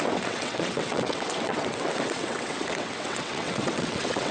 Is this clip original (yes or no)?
no